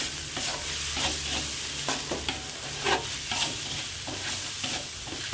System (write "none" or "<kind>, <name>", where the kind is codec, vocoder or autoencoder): none